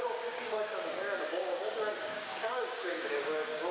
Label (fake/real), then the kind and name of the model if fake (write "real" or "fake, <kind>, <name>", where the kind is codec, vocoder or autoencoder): fake, codec, DAC